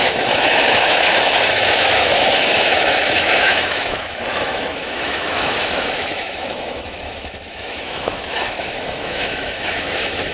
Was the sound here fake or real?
fake